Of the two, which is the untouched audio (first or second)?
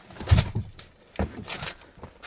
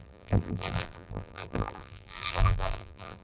first